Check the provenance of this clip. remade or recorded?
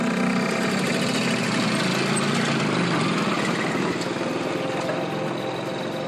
recorded